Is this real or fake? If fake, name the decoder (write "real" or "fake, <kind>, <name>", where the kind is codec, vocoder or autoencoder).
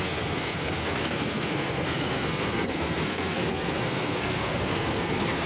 fake, codec, SNAC